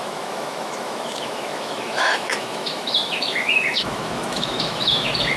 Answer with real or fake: fake